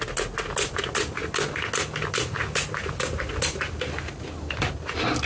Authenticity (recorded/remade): recorded